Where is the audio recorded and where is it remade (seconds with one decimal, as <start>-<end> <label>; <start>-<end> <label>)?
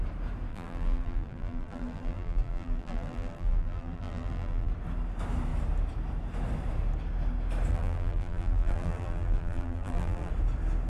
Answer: 0.0-0.5 recorded; 0.5-4.7 remade; 4.7-7.7 recorded; 7.7-10.3 remade; 10.3-10.9 recorded